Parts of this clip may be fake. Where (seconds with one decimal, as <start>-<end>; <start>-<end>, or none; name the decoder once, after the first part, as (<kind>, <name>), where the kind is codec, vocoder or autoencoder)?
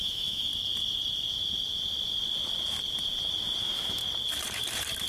0.0-0.5 (autoencoder, DAC-VAE); 3.6-4.0